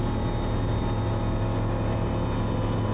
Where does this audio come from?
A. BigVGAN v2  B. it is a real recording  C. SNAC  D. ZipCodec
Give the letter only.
B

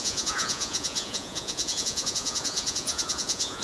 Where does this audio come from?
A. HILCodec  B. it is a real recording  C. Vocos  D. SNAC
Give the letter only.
C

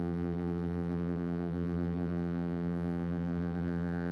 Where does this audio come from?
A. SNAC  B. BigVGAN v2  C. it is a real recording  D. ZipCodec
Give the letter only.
B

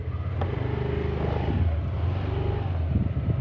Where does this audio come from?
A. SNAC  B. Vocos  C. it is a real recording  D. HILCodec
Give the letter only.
C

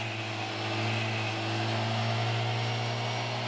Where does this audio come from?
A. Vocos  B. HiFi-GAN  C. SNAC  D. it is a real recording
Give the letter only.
D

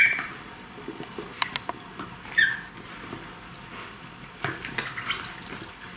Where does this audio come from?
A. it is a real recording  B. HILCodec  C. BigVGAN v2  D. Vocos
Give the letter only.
A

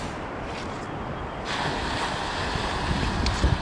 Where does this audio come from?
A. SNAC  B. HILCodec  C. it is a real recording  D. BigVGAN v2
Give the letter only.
C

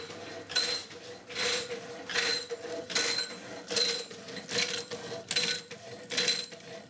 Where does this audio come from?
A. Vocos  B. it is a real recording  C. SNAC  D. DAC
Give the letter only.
B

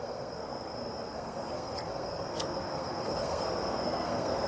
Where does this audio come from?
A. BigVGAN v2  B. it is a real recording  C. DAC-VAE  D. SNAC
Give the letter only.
D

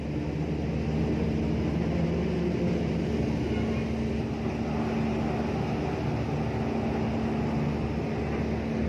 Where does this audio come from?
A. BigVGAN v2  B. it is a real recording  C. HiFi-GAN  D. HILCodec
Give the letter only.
B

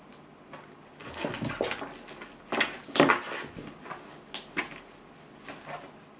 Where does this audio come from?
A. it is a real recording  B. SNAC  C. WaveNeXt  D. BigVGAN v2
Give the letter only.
A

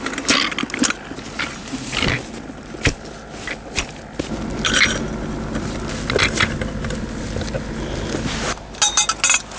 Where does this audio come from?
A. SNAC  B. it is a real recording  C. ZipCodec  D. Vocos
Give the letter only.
B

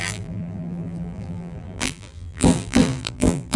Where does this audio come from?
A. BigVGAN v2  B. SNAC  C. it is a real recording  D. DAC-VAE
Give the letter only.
A